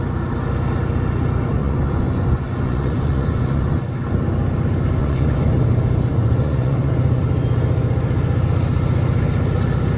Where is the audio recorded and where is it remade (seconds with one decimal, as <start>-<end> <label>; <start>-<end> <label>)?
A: 0.0-1.6 recorded; 1.6-3.8 remade; 3.8-5.0 recorded; 5.0-5.5 remade; 5.5-6.1 recorded; 6.1-7.2 remade; 7.2-10.0 recorded